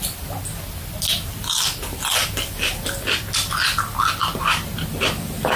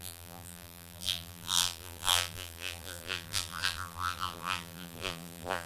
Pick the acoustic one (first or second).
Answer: first